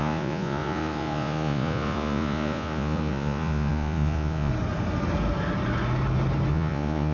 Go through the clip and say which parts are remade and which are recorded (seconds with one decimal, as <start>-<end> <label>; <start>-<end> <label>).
0.0-4.5 remade; 4.5-6.5 recorded; 6.5-7.1 remade